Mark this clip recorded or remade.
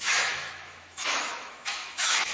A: remade